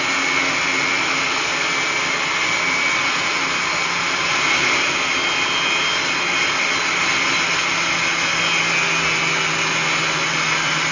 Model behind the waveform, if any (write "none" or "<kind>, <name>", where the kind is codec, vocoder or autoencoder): none